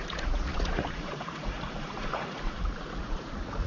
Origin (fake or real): fake